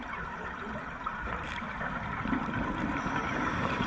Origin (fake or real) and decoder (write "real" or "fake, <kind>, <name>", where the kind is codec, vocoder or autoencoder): fake, vocoder, BigVGAN v2